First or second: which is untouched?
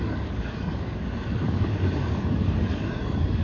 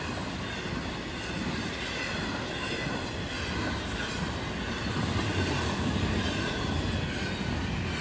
second